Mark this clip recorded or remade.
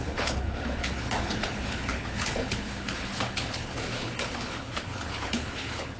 remade